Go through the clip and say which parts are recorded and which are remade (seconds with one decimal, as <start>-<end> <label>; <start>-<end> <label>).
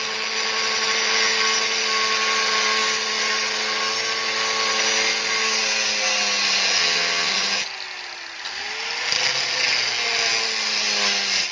0.0-6.8 recorded; 6.8-7.3 remade; 7.3-11.5 recorded